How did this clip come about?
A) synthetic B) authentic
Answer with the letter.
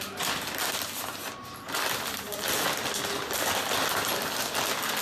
B